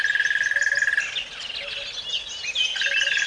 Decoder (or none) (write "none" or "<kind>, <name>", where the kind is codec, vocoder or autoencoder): none